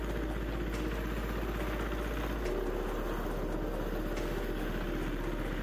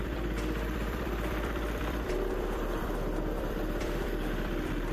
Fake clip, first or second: second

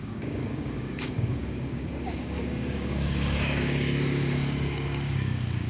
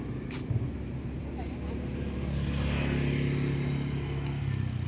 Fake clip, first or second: first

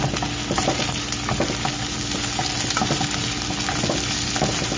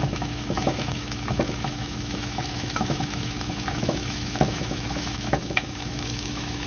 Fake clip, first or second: second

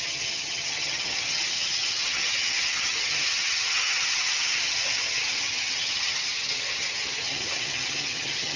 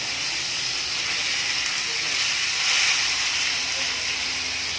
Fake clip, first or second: first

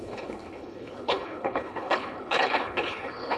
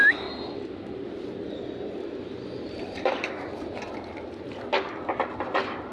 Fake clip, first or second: first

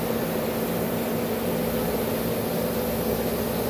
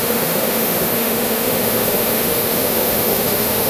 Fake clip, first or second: second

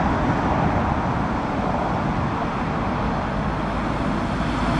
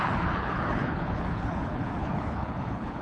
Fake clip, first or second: second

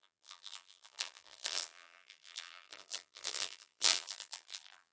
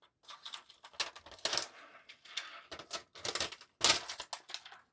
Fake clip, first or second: first